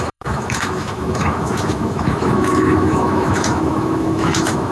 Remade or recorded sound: remade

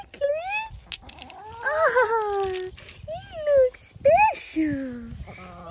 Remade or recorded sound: recorded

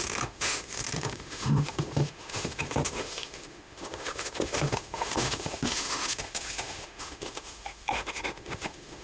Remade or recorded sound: remade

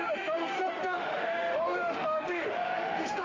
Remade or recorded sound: remade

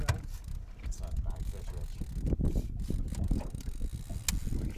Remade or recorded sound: recorded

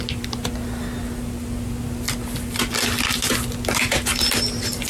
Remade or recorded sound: recorded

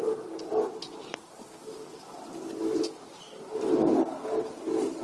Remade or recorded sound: recorded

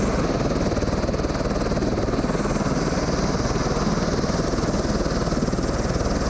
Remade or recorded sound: recorded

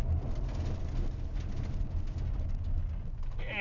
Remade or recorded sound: recorded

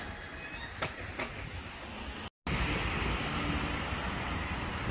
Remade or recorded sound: recorded